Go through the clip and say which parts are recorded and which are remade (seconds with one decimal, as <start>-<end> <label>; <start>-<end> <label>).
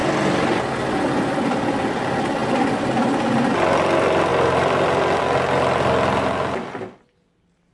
0.0-7.7 recorded